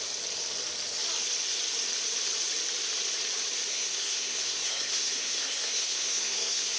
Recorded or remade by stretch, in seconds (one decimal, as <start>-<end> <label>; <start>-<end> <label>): 0.0-3.7 recorded; 3.7-6.8 remade